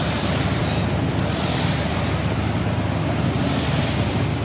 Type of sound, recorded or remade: remade